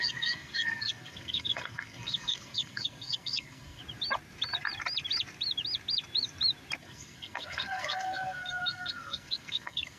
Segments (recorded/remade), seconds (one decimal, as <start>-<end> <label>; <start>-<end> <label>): 0.0-3.8 remade; 3.8-6.8 recorded; 6.8-10.0 remade

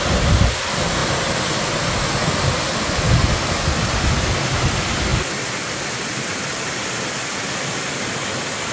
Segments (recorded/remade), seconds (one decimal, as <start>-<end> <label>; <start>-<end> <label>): 0.0-8.7 recorded

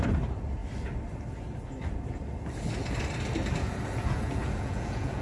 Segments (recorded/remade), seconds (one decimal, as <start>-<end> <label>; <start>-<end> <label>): 0.0-3.6 recorded; 3.6-5.2 remade

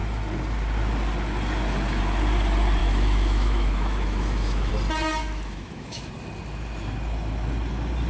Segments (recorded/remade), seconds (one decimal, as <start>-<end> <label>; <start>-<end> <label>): 0.0-2.8 recorded; 2.8-4.7 remade; 4.7-5.2 recorded; 5.2-6.1 remade; 6.1-8.1 recorded

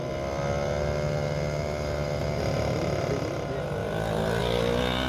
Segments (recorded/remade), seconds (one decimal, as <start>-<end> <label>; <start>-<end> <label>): 0.0-5.1 recorded

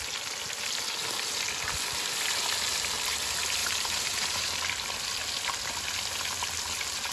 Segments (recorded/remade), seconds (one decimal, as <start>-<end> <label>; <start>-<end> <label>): 0.0-3.6 recorded; 3.6-4.5 remade; 4.5-7.1 recorded